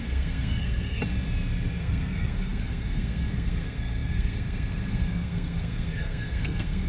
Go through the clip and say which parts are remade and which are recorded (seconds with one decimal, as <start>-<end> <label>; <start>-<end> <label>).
0.0-1.0 remade; 1.0-1.8 recorded; 1.8-6.9 remade